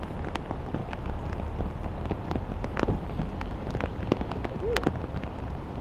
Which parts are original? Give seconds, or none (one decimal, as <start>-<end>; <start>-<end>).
0.0-5.8